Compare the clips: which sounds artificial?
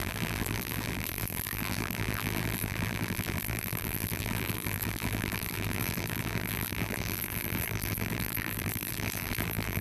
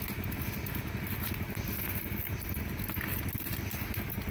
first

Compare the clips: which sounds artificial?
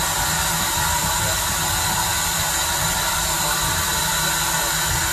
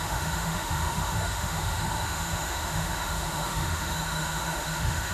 second